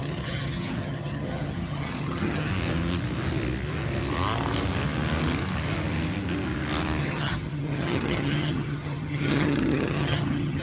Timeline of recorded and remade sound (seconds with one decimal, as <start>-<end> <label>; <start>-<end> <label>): 0.0-2.5 remade; 2.5-7.0 recorded; 7.0-10.6 remade